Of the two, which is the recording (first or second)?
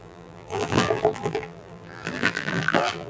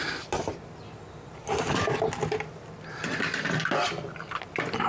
second